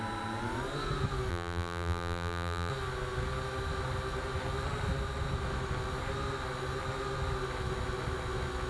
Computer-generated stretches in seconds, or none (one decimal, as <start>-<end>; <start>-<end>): 1.3-2.7